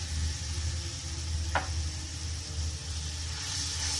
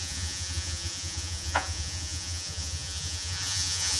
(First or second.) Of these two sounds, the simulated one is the second